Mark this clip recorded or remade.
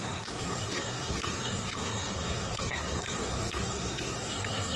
remade